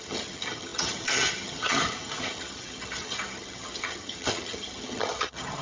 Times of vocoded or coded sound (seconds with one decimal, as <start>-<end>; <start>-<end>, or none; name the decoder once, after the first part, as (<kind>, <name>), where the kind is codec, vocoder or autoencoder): 0.0-5.6 (vocoder, HiFi-GAN)